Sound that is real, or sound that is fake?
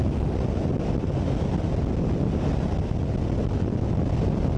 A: real